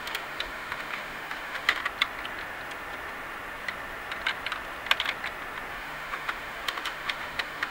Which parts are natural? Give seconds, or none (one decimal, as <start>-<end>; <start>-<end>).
1.8-5.7